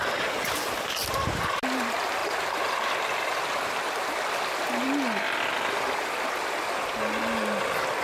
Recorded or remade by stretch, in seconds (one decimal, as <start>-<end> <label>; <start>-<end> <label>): 0.0-8.0 recorded